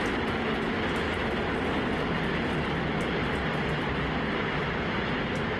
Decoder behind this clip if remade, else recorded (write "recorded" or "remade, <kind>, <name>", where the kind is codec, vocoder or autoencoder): recorded